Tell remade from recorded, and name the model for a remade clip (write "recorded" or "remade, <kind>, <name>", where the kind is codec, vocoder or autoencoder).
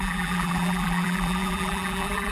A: remade, vocoder, BigVGAN v2